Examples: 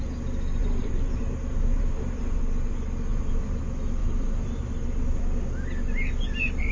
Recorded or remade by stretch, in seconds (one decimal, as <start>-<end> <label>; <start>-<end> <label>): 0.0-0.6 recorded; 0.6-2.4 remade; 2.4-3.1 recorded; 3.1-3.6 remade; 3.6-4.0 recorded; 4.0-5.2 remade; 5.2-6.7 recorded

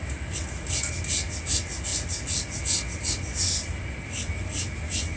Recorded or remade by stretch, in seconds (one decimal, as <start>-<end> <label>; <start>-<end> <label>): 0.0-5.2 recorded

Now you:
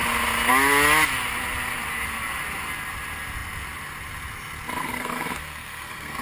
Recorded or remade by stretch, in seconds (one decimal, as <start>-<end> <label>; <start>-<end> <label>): 0.0-4.8 recorded; 4.8-6.2 remade

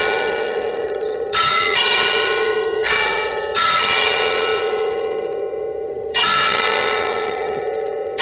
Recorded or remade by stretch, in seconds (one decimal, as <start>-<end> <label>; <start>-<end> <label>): 0.0-8.2 remade

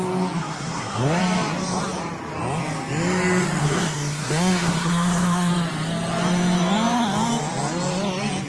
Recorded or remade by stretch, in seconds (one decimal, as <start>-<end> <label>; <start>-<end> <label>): 0.0-0.4 recorded; 0.4-1.2 remade; 1.2-3.6 recorded; 3.6-5.5 remade; 5.5-8.5 recorded

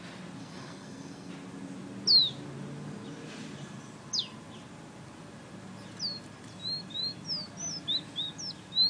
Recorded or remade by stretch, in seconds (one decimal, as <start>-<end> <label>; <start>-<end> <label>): 0.0-0.4 recorded; 0.4-1.3 remade; 1.3-8.9 recorded